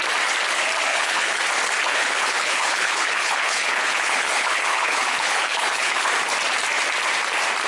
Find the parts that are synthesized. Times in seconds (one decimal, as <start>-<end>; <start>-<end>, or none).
0.9-1.4; 1.9-6.1